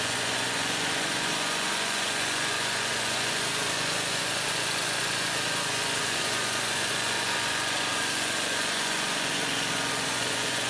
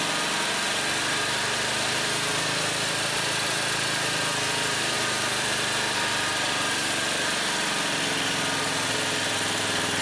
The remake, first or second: first